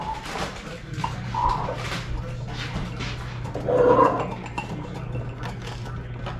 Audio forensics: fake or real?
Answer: real